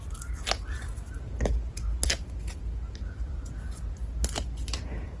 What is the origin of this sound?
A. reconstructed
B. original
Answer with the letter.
B